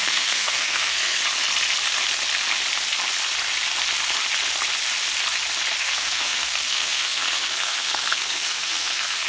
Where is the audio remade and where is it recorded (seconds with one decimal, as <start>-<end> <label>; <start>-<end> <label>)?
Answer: 0.0-1.2 remade; 1.2-5.8 recorded; 5.8-9.3 remade